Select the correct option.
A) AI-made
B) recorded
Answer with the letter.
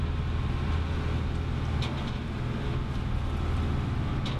B